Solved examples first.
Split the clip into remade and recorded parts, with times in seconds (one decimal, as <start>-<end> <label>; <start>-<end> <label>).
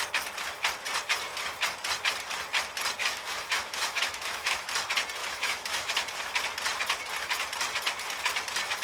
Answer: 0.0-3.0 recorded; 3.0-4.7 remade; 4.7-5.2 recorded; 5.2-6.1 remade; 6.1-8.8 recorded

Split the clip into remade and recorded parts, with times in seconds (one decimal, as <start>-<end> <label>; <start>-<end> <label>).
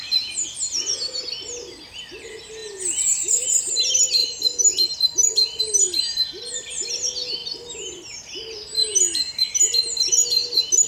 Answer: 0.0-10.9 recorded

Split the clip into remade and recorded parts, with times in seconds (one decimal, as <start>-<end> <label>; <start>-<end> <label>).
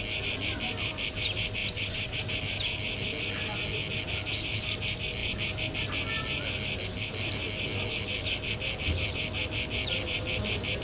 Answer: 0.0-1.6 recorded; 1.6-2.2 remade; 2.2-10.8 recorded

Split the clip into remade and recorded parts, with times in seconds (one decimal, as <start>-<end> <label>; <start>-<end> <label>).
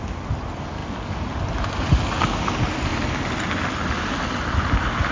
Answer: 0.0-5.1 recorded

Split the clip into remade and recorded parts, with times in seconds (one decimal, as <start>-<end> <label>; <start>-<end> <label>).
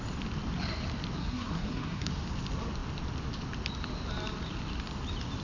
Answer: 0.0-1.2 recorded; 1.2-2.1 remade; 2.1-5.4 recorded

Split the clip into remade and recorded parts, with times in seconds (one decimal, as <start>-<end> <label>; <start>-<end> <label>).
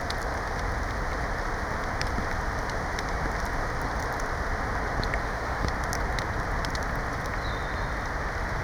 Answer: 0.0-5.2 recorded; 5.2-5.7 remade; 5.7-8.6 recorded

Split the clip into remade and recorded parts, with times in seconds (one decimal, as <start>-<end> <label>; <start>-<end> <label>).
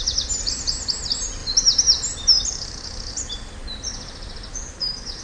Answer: 0.0-4.5 recorded; 4.5-5.2 remade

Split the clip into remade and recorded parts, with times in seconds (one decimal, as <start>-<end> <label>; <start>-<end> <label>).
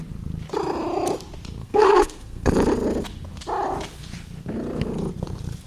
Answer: 0.0-1.6 recorded; 1.6-2.5 remade; 2.5-5.7 recorded